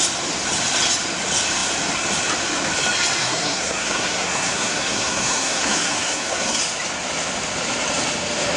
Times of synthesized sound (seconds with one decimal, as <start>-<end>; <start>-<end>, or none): 3.2-6.6